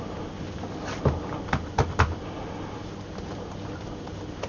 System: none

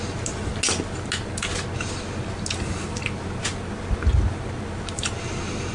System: none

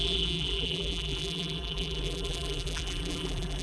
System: vocoder, BigVGAN v2